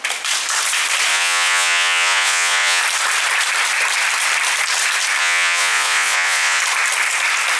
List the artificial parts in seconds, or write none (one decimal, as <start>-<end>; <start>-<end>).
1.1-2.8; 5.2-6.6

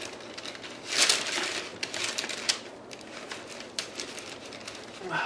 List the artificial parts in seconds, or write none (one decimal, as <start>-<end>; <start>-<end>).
none

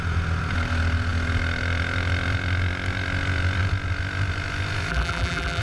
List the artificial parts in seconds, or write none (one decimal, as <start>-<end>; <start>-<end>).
4.9-5.6